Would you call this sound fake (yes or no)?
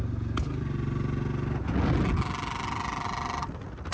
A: no